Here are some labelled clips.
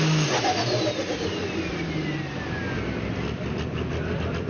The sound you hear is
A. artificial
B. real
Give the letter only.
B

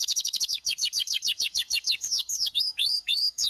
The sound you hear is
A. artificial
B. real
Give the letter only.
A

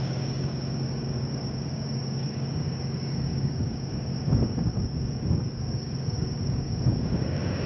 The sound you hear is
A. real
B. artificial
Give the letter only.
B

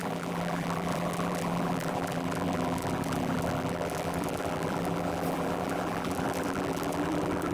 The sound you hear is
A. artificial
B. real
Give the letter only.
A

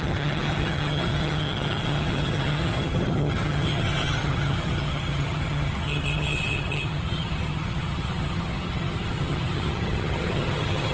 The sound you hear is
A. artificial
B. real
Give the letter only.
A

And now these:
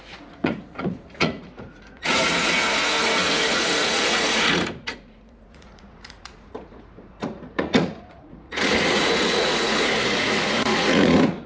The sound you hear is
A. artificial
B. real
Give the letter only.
A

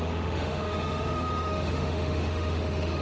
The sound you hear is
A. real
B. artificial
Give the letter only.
B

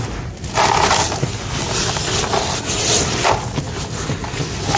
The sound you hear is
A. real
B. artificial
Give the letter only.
A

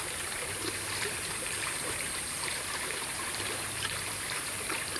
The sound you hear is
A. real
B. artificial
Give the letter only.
B